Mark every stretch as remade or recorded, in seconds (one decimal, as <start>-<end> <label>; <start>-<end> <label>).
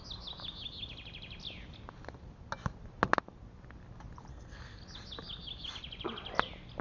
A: 0.0-4.3 recorded; 4.3-4.8 remade; 4.8-6.8 recorded